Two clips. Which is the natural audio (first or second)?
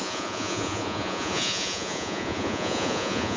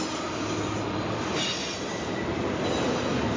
second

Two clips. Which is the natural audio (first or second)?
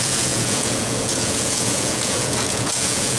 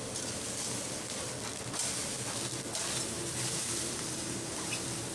second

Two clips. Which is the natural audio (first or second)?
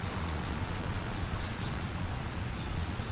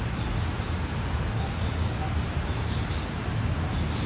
second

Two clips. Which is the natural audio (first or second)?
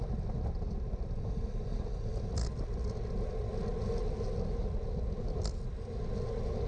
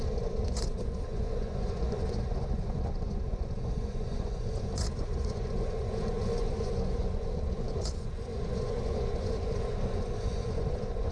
first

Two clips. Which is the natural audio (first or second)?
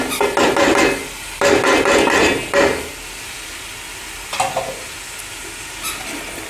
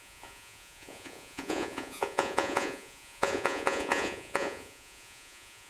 first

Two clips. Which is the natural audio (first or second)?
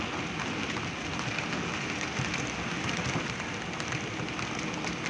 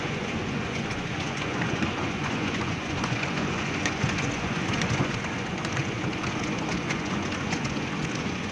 first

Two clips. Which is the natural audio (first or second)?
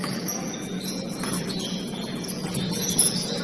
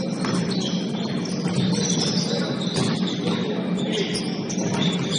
second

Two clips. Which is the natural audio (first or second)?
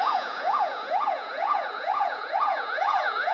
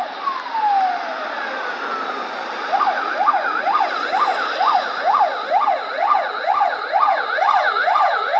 second